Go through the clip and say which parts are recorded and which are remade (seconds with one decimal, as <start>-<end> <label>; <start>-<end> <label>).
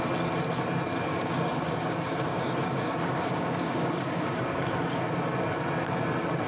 0.0-1.1 recorded; 1.1-5.0 remade; 5.0-6.5 recorded